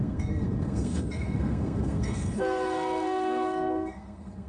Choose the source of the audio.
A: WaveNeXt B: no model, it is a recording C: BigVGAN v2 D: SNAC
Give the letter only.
D